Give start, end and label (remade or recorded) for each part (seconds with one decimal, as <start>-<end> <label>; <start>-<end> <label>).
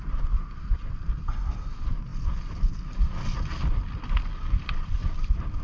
0.0-5.6 recorded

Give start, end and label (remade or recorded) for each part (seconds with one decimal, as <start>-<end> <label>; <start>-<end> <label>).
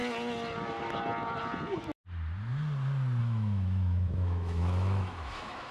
0.0-3.2 recorded; 3.2-5.7 remade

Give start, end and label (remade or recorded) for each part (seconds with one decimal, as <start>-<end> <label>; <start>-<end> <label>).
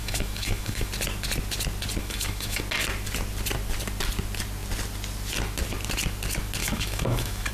0.0-0.9 remade; 0.9-2.0 recorded; 2.0-2.6 remade; 2.6-6.6 recorded; 6.6-7.5 remade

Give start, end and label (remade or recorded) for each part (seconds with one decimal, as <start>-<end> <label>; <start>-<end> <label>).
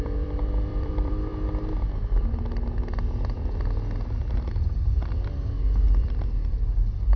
0.0-1.3 remade; 1.3-5.6 recorded; 5.6-7.2 remade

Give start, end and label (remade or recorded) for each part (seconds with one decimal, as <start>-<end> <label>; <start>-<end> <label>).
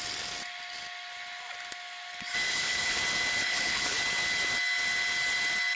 0.0-2.5 recorded; 2.5-3.0 remade; 3.0-3.4 recorded; 3.4-4.0 remade; 4.0-5.8 recorded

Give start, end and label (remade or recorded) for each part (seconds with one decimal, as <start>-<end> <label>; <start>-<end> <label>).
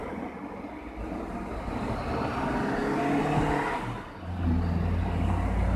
0.0-5.8 recorded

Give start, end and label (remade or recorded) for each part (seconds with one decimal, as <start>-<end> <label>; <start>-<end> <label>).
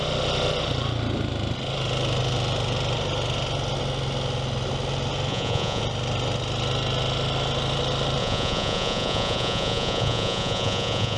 0.0-5.3 recorded; 5.3-5.8 remade; 5.8-8.2 recorded; 8.2-11.2 remade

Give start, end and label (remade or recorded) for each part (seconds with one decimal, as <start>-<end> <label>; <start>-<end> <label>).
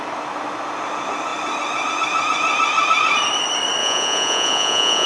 0.0-3.8 recorded; 3.8-5.1 remade